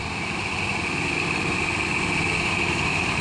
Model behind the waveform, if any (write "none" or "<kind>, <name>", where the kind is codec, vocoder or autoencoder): none